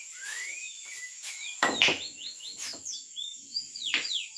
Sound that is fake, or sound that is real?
fake